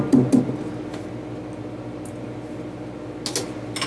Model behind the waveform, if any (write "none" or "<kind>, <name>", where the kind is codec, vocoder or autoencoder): none